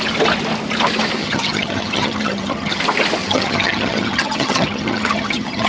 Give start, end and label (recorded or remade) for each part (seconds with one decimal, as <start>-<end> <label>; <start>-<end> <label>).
0.0-1.2 recorded; 1.2-2.8 remade; 2.8-3.2 recorded; 3.2-5.7 remade